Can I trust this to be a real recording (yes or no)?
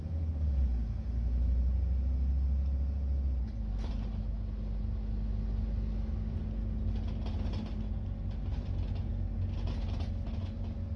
yes